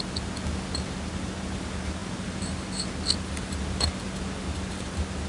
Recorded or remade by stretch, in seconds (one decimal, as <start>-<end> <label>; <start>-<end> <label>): 0.0-5.3 recorded